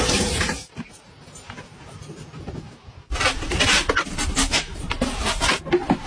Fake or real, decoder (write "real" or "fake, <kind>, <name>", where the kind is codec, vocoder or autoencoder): real